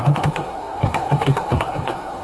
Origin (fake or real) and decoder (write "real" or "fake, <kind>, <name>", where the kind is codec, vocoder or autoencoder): fake, codec, SNAC